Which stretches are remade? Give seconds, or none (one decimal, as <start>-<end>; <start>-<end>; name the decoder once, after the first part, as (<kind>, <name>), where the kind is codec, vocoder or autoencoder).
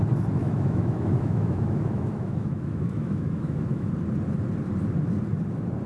0.4-3.9 (autoencoder, DAC-VAE)